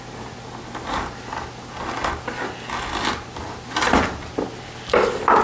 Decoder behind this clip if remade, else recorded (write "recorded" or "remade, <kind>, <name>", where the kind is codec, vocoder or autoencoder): recorded